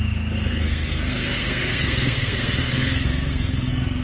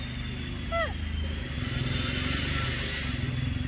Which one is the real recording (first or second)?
second